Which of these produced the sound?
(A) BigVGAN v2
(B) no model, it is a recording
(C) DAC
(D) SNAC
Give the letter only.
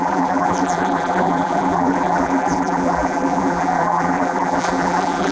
A